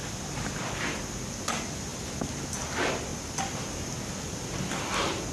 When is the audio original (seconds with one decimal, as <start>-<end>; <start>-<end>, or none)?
0.0-1.9; 2.4-5.3